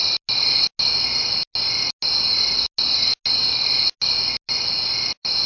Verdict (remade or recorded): recorded